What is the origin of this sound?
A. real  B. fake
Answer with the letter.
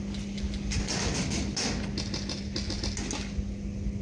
A